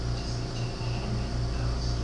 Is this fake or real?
real